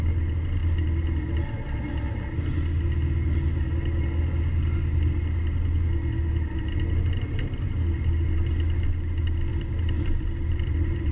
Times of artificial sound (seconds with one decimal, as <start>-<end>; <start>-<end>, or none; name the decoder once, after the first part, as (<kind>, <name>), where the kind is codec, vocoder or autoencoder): 9.5-11.1 (vocoder, BigVGAN v2)